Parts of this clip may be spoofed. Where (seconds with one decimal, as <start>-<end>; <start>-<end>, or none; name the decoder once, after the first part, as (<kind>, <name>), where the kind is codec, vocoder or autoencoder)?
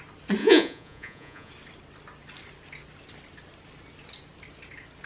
0.4-1.5 (vocoder, Vocos)